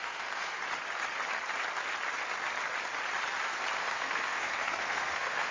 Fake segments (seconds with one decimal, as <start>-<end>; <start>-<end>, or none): 0.0-0.6; 3.9-5.5